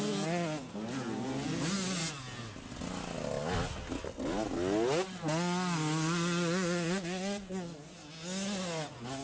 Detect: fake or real real